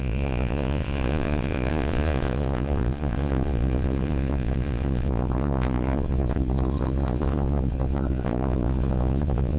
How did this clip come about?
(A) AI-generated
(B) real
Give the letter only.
A